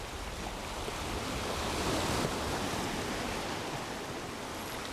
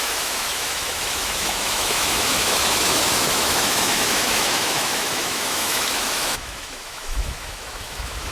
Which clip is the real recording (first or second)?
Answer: first